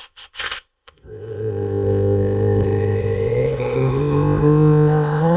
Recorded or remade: remade